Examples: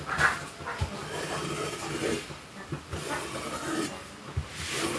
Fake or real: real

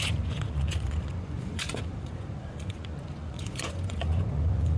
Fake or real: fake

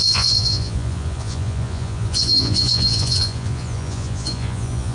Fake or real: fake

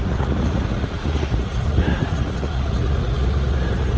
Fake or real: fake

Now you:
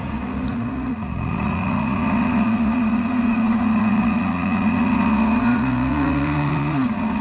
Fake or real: fake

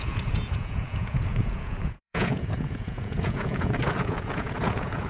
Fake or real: fake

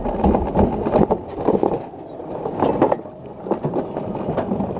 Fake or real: real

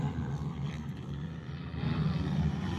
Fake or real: real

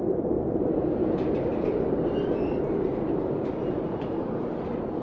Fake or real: real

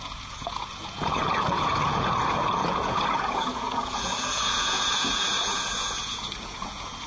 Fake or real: fake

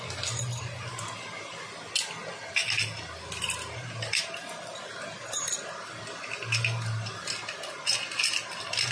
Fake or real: real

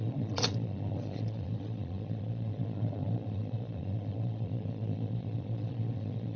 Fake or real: fake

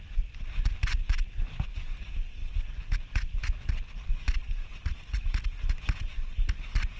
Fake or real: real